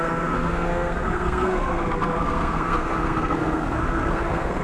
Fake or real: fake